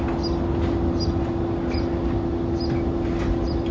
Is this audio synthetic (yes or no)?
no